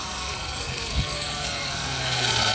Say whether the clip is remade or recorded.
remade